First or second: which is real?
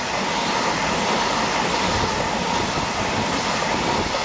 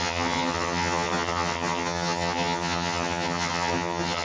first